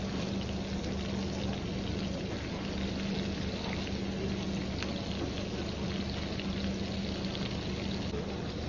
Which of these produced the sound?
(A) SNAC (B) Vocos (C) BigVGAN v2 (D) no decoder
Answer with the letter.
D